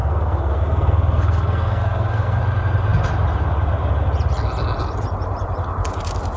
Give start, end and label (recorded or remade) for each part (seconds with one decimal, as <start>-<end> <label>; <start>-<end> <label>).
0.0-2.4 remade; 2.4-6.4 recorded